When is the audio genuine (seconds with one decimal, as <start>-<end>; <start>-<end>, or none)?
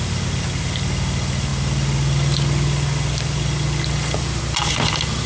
0.0-5.3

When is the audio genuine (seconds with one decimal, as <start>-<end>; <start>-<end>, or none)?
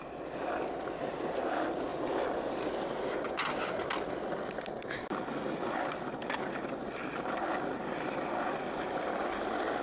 0.0-9.8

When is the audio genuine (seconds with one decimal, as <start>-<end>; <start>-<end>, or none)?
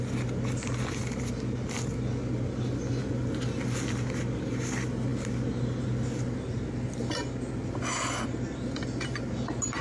0.0-9.8